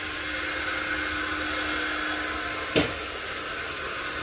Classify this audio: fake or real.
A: real